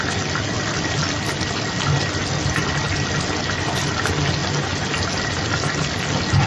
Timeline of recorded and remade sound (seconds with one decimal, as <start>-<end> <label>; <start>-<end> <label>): 0.0-6.5 recorded